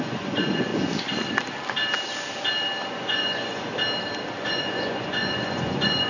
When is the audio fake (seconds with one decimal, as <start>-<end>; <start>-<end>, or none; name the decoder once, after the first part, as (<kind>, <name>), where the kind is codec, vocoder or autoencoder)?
0.0-0.7 (vocoder, Vocos); 2.9-3.7; 4.4-6.1